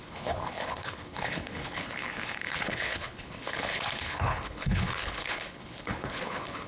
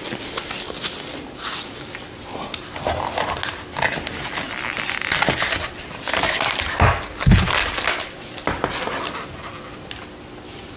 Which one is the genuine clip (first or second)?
second